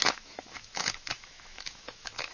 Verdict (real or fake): fake